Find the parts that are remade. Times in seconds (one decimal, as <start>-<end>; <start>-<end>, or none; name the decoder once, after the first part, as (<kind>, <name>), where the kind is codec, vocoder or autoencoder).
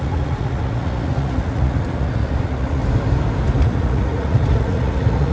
0.0-2.8 (vocoder, Vocos); 3.6-5.3